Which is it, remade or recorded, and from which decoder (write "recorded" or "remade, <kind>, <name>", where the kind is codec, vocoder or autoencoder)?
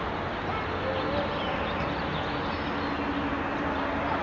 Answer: recorded